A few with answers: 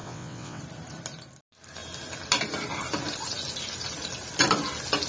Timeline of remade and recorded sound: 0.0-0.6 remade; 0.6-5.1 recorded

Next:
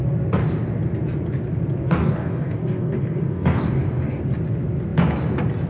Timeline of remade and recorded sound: 0.0-1.8 recorded; 1.8-4.2 remade; 4.2-5.7 recorded

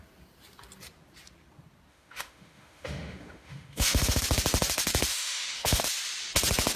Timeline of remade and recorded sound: 0.0-1.9 recorded; 1.9-4.2 remade; 4.2-5.1 recorded; 5.1-5.8 remade; 5.8-6.8 recorded

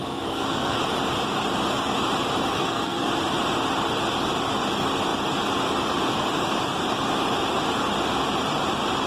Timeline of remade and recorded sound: 0.0-0.8 remade; 0.8-2.4 recorded; 2.4-3.1 remade; 3.1-9.1 recorded

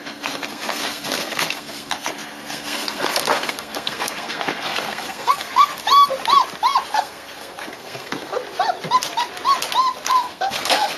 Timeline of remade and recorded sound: 0.0-5.8 remade; 5.8-6.9 recorded; 6.9-8.3 remade; 8.3-10.1 recorded; 10.1-11.0 remade

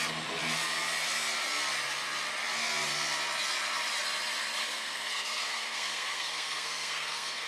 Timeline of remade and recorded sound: 0.0-4.6 recorded; 4.6-7.5 remade

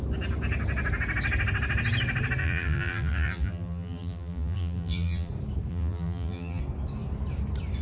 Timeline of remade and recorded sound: 0.0-2.4 recorded; 2.4-5.3 remade; 5.3-5.7 recorded; 5.7-6.6 remade; 6.6-7.8 recorded

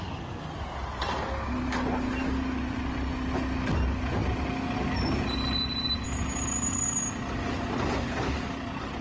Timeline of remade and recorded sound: 0.0-9.0 recorded